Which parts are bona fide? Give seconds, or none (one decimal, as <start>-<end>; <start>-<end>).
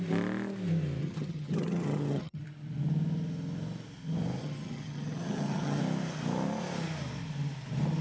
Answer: 0.0-1.0; 2.4-4.4; 5.8-8.0